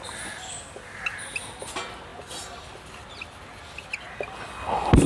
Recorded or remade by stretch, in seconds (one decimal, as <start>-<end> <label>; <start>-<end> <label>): 0.0-5.1 recorded